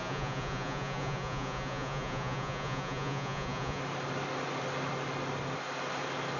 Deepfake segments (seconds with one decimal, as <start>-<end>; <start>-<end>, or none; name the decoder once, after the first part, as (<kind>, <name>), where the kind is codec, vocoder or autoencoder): 0.0-3.8 (vocoder, Vocos)